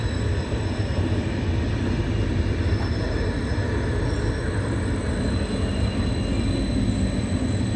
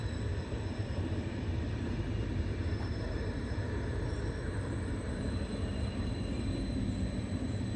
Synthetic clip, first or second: second